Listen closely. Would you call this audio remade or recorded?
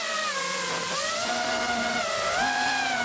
remade